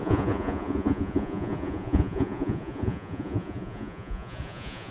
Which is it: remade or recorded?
remade